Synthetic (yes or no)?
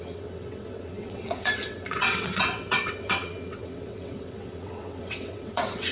yes